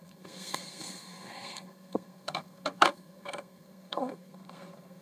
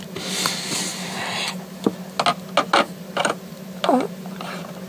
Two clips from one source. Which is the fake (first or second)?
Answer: first